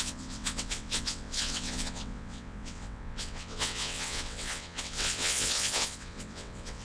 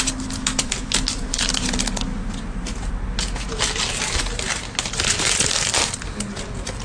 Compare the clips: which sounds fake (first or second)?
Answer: first